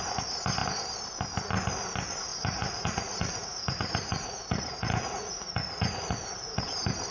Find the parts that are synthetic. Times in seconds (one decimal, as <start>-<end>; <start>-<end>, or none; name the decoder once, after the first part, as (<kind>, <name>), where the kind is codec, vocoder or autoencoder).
2.3-6.6 (vocoder, Vocos)